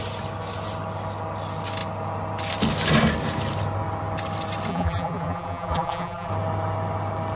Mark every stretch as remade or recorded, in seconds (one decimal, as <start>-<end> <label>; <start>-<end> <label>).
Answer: 0.0-4.7 recorded; 4.7-6.3 remade; 6.3-7.4 recorded